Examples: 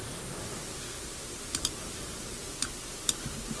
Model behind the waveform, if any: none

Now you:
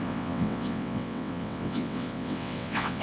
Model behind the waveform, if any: vocoder, WaveNeXt